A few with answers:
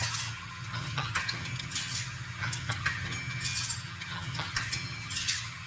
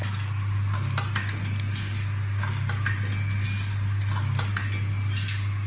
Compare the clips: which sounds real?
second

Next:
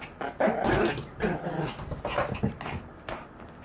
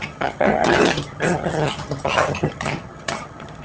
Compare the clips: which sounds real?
first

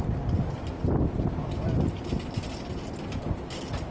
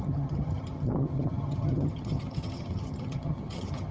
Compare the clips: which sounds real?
first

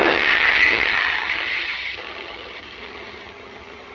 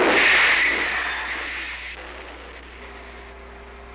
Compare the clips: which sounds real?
second